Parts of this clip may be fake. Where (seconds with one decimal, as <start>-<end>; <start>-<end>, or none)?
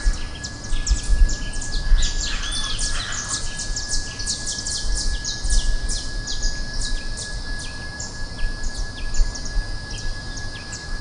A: none